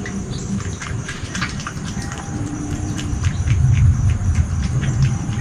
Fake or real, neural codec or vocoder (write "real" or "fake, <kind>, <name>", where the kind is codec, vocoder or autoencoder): fake, vocoder, BigVGAN v2